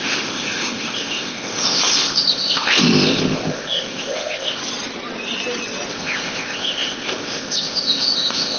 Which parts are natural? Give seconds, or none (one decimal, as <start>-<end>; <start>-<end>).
4.6-5.9